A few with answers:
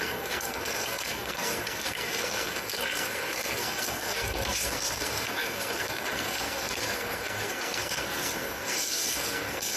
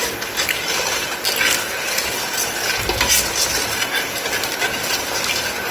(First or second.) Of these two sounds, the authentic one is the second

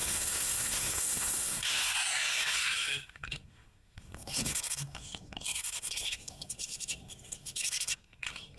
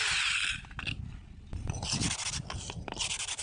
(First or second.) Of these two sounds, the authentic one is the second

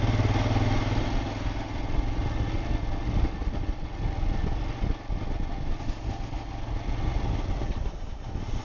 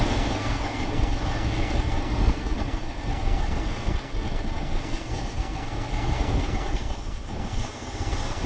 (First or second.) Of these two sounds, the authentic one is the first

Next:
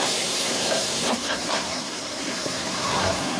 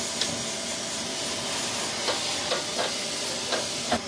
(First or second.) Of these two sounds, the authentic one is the second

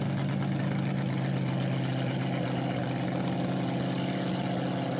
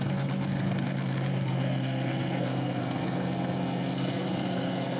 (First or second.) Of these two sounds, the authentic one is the first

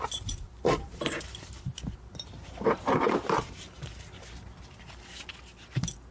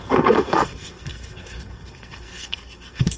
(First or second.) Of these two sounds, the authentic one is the first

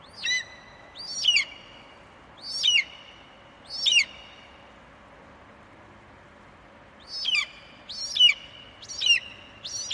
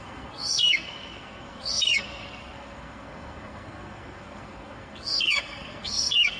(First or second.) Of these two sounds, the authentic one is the first